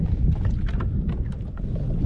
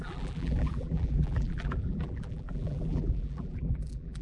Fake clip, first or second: second